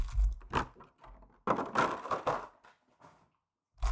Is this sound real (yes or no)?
yes